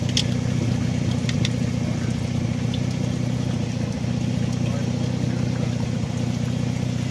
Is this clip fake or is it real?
real